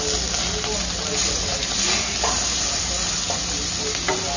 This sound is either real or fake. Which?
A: real